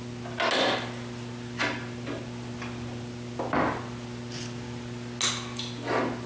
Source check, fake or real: real